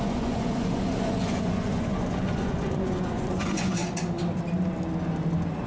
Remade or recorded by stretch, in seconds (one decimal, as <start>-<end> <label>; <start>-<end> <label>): 0.0-3.8 remade; 3.8-5.7 recorded

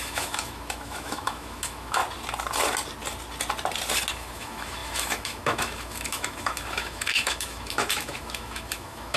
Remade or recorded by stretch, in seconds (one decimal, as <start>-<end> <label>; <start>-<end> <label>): 0.0-2.0 remade; 2.0-4.1 recorded; 4.1-9.2 remade

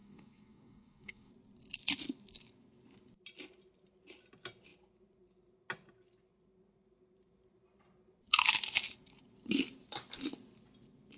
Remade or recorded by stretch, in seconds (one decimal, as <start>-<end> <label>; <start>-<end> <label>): 0.0-1.3 remade; 1.3-11.2 recorded

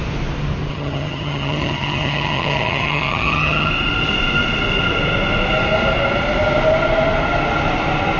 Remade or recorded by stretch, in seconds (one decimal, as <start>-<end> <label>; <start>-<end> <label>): 0.0-0.7 recorded; 0.7-3.7 remade; 3.7-8.2 recorded

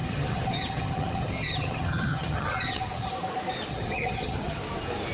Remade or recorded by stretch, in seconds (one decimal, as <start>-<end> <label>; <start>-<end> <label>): 0.0-3.1 remade; 3.1-3.7 recorded; 3.7-4.6 remade; 4.6-5.1 recorded

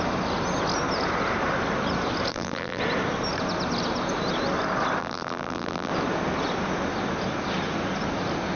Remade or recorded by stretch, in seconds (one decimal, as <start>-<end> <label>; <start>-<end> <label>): 0.0-2.3 recorded; 2.3-2.8 remade; 2.8-5.0 recorded; 5.0-5.9 remade; 5.9-8.6 recorded

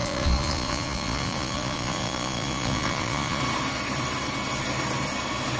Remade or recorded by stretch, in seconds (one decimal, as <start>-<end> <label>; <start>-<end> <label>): 0.0-3.4 remade; 3.4-5.6 recorded

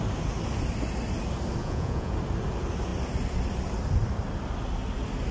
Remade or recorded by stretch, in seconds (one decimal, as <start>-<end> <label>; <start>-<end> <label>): 0.0-1.6 recorded; 1.6-2.1 remade; 2.1-5.3 recorded